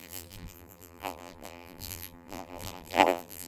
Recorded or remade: remade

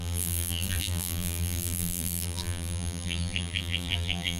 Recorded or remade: remade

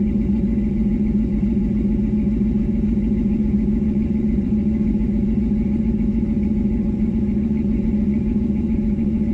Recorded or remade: remade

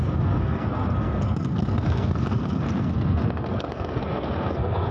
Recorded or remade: remade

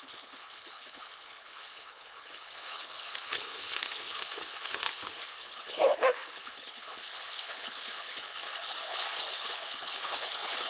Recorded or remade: remade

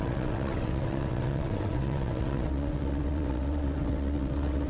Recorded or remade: remade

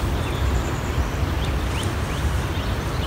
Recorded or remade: recorded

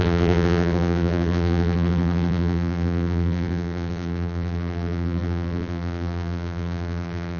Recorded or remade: remade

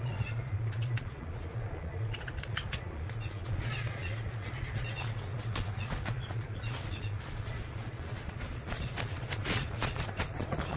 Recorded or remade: remade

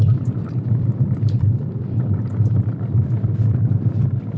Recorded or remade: remade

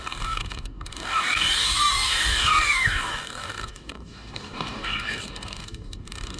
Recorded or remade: remade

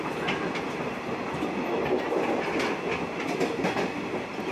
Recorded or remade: recorded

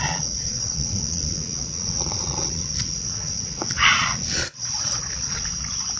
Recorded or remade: remade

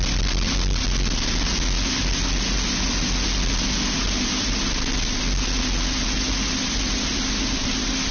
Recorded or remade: recorded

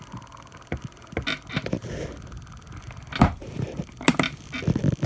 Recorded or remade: recorded